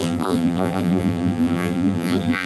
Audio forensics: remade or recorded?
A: remade